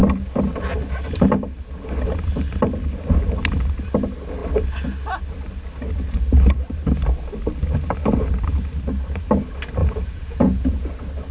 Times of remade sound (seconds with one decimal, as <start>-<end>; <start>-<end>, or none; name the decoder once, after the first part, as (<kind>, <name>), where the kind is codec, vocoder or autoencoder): 9.8-10.9 (vocoder, Vocos)